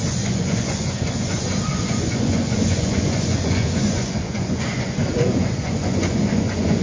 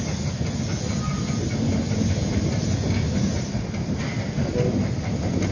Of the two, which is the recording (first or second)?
second